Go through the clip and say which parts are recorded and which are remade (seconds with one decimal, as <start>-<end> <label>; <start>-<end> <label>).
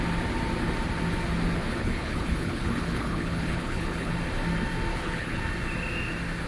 0.0-1.7 recorded; 1.7-4.1 remade; 4.1-4.9 recorded; 4.9-5.4 remade; 5.4-6.5 recorded